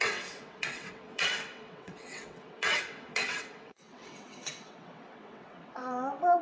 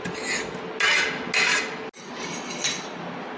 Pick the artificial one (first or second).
first